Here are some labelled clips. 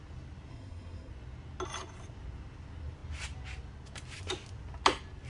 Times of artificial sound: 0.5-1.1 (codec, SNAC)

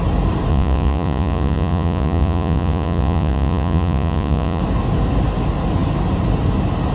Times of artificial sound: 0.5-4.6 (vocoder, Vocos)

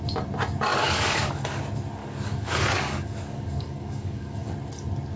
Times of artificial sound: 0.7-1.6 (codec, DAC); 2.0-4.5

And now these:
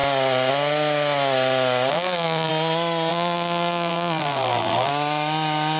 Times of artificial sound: 1.9-2.5 (vocoder, BigVGAN v2); 3.1-4.9

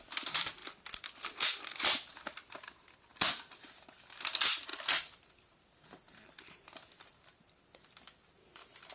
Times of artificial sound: 4.7-8.9 (vocoder, BigVGAN v2)

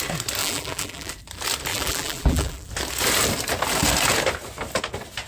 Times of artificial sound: 0.4-1.1 (vocoder, BigVGAN v2); 1.7-2.7

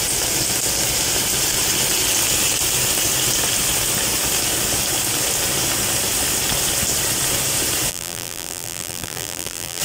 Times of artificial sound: 7.9-9.8 (vocoder, BigVGAN v2)

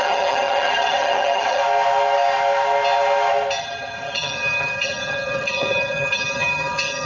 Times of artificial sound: 0.0-1.6 (vocoder, HiFi-GAN); 3.6-7.1